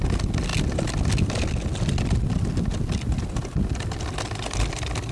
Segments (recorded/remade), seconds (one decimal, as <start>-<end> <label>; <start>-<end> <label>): 0.0-5.1 recorded

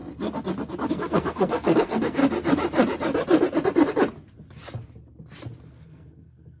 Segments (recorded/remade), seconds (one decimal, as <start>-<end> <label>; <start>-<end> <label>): 0.0-0.9 recorded; 0.9-2.2 remade; 2.2-5.7 recorded; 5.7-6.6 remade

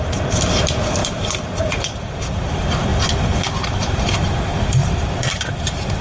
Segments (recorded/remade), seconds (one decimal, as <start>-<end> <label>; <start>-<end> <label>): 0.0-2.9 remade; 2.9-3.8 recorded; 3.8-6.0 remade

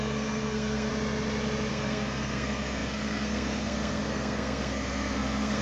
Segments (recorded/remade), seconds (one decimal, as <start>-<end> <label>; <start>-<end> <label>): 0.0-0.9 remade; 0.9-1.7 recorded; 1.7-5.6 remade

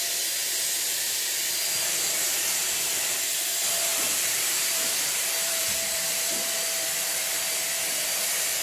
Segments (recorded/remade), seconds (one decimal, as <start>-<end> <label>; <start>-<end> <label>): 0.0-3.9 recorded; 3.9-8.6 remade